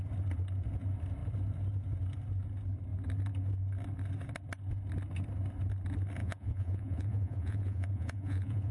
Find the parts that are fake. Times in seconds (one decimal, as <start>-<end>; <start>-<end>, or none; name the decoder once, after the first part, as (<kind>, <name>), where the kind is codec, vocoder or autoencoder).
6.2-8.7 (vocoder, Vocos)